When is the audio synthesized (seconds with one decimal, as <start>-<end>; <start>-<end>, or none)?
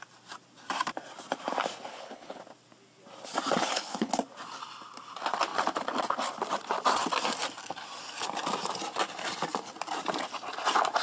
1.9-2.4; 3.6-4.1